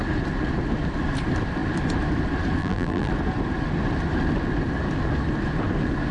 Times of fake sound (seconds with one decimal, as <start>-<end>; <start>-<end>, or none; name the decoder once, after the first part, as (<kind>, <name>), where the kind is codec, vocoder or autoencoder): 2.6-3.1 (vocoder, BigVGAN v2)